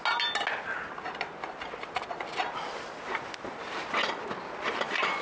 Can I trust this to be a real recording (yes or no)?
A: yes